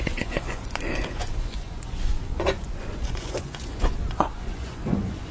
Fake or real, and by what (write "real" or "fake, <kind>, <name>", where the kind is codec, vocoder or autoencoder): fake, vocoder, Vocos